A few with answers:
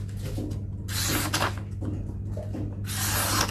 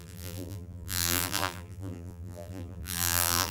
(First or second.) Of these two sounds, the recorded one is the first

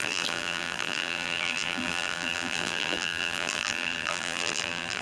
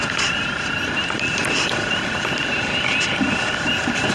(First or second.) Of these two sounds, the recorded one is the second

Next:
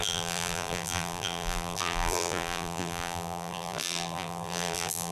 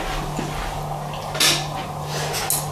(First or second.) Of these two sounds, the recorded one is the second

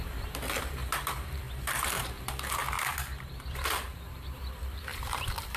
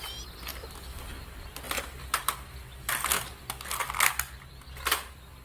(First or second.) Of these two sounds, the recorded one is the second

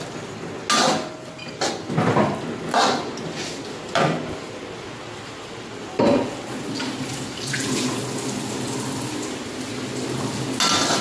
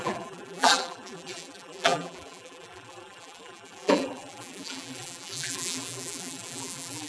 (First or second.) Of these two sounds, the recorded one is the first